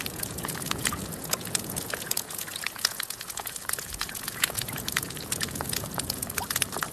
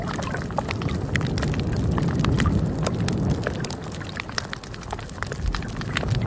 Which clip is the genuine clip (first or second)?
second